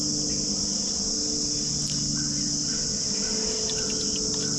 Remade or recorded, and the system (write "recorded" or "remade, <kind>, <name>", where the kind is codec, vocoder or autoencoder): recorded